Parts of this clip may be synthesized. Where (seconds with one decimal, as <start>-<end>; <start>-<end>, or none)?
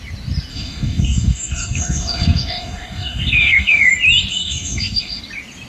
0.5-3.9; 4.3-5.2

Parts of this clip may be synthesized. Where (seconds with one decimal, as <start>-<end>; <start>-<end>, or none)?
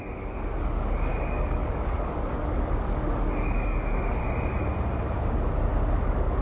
0.0-4.2; 6.0-6.4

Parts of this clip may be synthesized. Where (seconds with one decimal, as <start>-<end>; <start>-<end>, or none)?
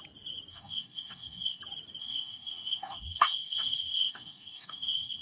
0.5-1.6; 2.0-5.2